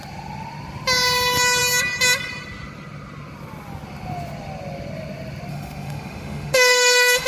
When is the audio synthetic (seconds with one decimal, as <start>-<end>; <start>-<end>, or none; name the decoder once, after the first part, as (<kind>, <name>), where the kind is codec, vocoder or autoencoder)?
5.5-7.3 (autoencoder, DAC-VAE)